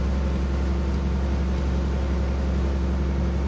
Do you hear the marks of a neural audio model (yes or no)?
no